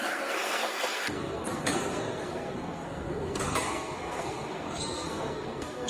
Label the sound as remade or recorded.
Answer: remade